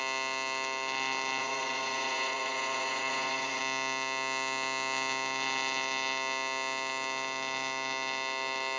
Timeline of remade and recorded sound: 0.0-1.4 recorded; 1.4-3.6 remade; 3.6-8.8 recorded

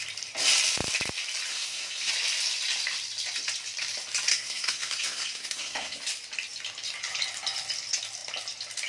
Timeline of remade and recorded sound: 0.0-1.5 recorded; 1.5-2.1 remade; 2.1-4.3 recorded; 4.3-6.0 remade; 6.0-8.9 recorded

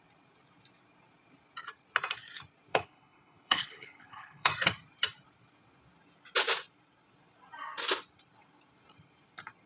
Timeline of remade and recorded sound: 0.0-2.7 recorded; 2.7-4.5 remade; 4.5-9.7 recorded